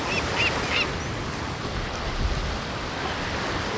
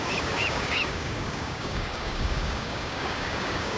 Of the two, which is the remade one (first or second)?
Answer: second